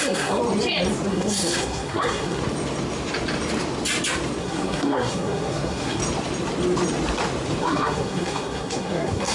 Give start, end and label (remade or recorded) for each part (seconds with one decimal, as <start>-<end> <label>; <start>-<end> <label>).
0.0-0.4 remade; 0.4-1.1 recorded; 1.1-2.4 remade; 2.4-4.4 recorded; 4.4-6.0 remade; 6.0-7.6 recorded; 7.6-9.3 remade